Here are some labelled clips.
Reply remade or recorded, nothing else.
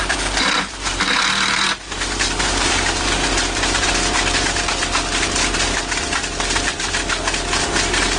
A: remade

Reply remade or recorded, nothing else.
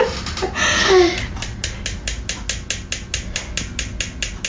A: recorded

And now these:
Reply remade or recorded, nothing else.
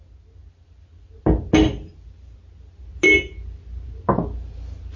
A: recorded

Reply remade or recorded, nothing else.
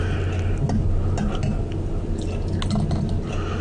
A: recorded